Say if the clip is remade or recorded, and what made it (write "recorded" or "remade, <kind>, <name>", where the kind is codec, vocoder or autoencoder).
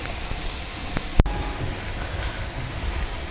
recorded